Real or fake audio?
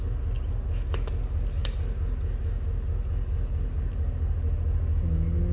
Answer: real